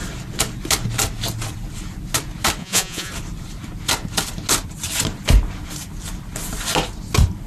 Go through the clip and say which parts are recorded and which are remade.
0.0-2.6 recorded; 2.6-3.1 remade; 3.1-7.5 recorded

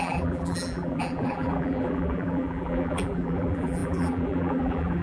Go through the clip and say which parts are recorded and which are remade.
0.0-5.0 remade

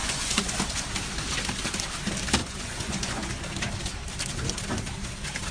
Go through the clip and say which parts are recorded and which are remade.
0.0-0.6 remade; 0.6-2.4 recorded; 2.4-3.3 remade; 3.3-5.5 recorded